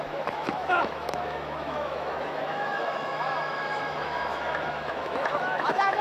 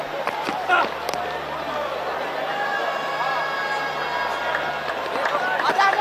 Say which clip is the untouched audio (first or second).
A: second